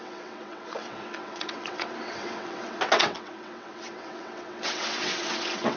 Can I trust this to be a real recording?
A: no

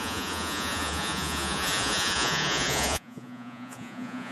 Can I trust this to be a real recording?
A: no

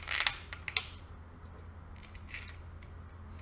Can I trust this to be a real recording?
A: yes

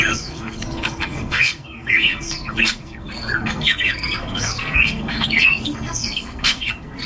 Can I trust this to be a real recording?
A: no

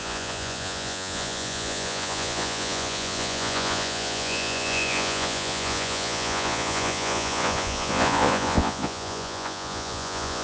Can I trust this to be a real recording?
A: no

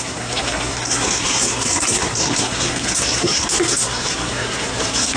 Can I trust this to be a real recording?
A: no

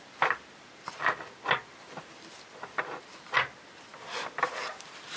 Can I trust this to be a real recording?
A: yes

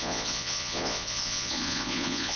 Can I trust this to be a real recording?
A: no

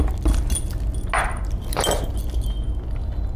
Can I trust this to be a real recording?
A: yes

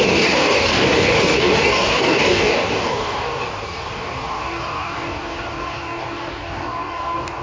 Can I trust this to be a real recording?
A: no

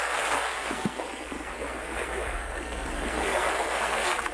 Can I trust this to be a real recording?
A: no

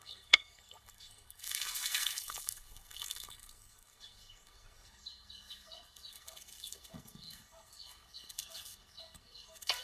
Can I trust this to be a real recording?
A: no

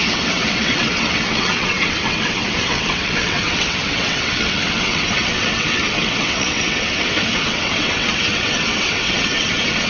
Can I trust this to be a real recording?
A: no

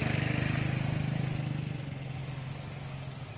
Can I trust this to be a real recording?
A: yes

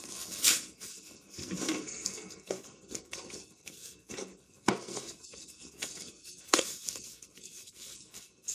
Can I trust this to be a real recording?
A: no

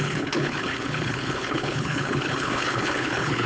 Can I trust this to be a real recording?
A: no